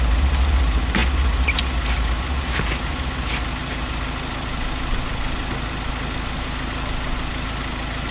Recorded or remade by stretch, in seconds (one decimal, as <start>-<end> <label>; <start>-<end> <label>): 0.0-8.1 recorded